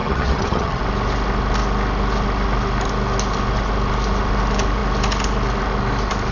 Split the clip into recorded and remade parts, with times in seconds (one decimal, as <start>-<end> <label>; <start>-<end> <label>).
0.0-0.8 remade; 0.8-6.3 recorded